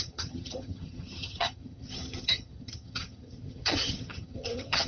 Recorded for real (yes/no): no